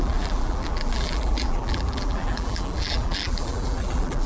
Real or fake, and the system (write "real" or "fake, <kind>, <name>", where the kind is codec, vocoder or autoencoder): fake, vocoder, BigVGAN v2